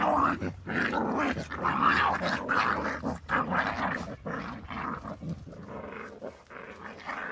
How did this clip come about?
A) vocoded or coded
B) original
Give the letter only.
B